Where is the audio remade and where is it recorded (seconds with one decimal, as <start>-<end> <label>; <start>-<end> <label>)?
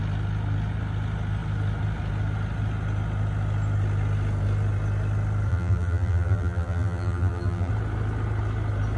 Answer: 0.0-5.5 recorded; 5.5-7.7 remade; 7.7-9.0 recorded